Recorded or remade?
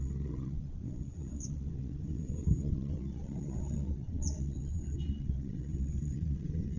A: remade